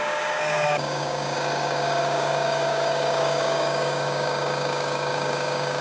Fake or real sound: fake